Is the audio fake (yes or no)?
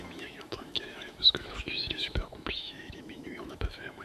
yes